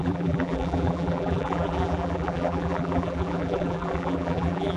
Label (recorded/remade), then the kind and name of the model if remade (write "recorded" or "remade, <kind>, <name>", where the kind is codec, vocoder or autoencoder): remade, vocoder, BigVGAN v2